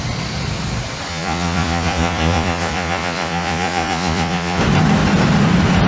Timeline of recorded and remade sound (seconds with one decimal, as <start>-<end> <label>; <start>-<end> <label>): 0.0-1.1 recorded; 1.1-4.6 remade; 4.6-5.9 recorded